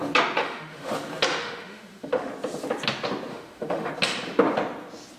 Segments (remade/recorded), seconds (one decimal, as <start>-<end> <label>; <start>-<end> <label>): 0.0-0.4 recorded; 0.4-0.9 remade; 0.9-1.4 recorded; 1.4-2.3 remade; 2.3-3.3 recorded; 3.3-3.9 remade; 3.9-5.2 recorded